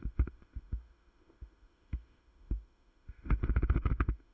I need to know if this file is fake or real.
fake